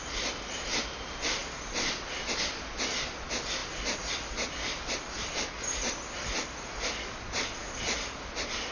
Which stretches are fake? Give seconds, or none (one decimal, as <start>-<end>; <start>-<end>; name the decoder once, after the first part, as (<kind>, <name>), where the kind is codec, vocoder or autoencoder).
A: none